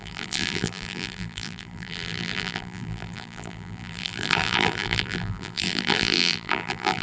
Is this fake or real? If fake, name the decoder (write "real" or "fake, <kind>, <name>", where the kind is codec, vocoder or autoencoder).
fake, vocoder, BigVGAN v2